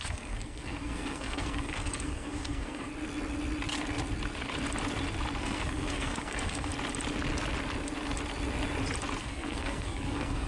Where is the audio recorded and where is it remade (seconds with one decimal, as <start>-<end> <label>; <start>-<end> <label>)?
0.0-2.9 remade; 2.9-5.4 recorded; 5.4-6.7 remade; 6.7-9.2 recorded; 9.2-10.5 remade